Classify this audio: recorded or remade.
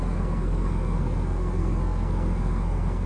remade